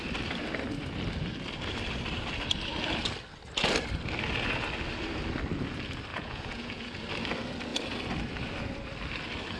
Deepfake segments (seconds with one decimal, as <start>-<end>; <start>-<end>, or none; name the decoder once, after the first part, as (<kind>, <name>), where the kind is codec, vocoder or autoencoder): 6.1-7.0 (vocoder, Vocos)